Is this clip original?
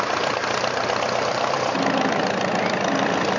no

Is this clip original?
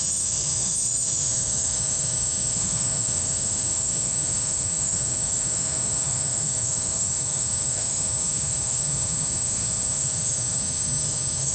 no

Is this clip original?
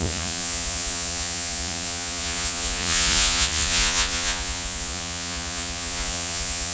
no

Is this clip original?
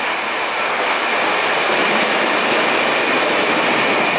yes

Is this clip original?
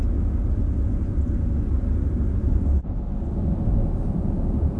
yes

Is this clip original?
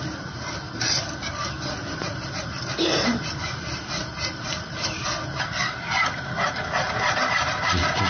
yes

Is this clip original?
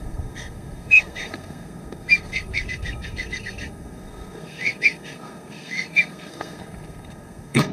no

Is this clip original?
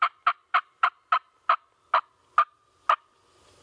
yes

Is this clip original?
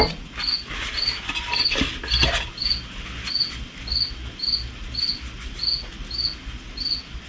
yes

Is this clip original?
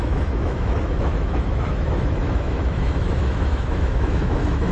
no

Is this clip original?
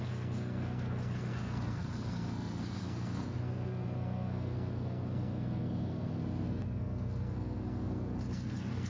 no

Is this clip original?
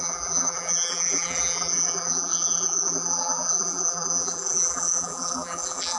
no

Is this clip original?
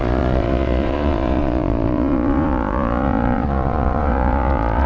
no